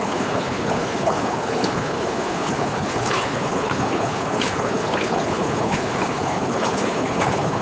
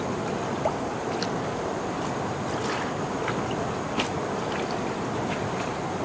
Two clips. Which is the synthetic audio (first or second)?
first